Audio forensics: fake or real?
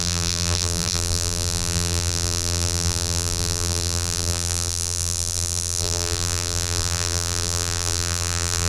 fake